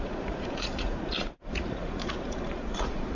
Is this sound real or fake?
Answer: fake